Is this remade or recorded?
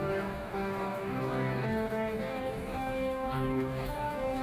remade